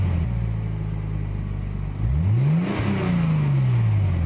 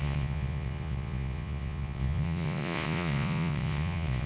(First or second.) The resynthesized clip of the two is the second